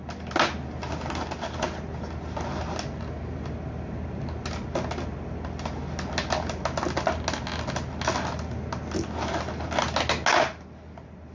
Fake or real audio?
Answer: real